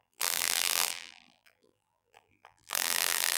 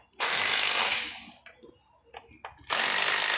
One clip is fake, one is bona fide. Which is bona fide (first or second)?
second